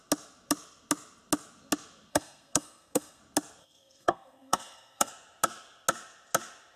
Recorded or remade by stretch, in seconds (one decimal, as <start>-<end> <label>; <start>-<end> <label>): 0.0-2.1 recorded; 2.1-3.2 remade; 3.2-3.6 recorded; 3.6-5.1 remade; 5.1-6.8 recorded